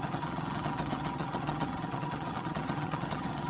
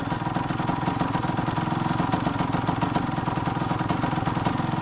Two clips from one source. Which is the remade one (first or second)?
first